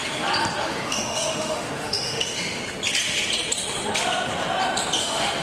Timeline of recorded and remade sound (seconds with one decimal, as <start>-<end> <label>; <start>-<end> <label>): 0.0-0.6 recorded; 0.6-2.6 remade; 2.6-5.0 recorded; 5.0-5.4 remade